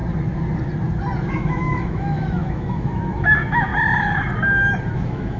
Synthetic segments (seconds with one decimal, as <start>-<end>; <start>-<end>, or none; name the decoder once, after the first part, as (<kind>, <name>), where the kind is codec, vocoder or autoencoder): 1.3-3.7 (autoencoder, DAC-VAE); 4.9-5.4